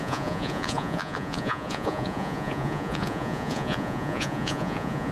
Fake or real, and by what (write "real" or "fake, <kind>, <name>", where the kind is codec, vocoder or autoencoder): fake, vocoder, Vocos